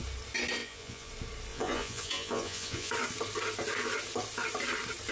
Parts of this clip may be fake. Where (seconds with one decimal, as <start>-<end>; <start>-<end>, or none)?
0.6-1.1; 1.5-2.9